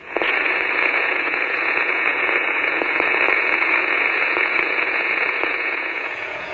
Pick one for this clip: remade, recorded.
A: remade